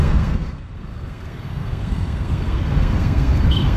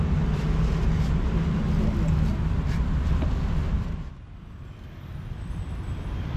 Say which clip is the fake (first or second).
first